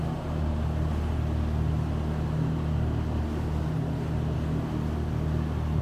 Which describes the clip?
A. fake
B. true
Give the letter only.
B